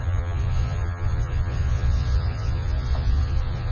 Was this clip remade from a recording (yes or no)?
yes